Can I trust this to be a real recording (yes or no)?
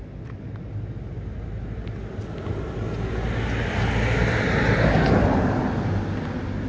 yes